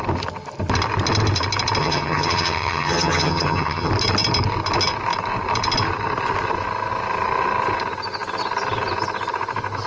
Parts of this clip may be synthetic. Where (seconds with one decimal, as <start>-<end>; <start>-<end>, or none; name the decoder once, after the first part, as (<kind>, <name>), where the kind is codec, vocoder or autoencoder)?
1.8-3.9 (vocoder, HiFi-GAN)